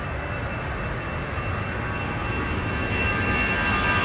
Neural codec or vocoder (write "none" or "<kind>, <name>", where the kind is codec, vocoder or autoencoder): none